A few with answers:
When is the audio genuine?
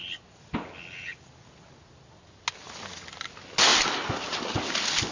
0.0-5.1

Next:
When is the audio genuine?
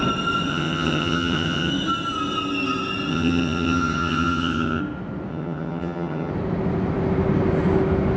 0.0-0.5; 1.7-3.1; 4.8-5.3; 6.3-8.2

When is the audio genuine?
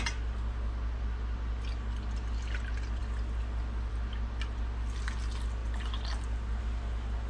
0.0-7.3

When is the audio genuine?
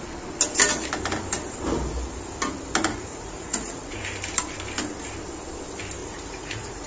0.0-2.9; 4.0-6.0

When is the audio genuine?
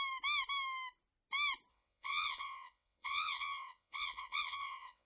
0.0-1.7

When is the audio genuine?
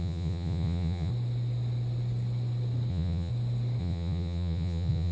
1.1-2.9; 3.3-3.8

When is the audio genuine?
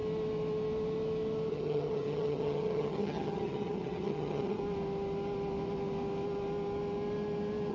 0.0-1.5; 4.6-7.7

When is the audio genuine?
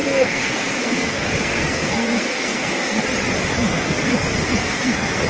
3.0-3.5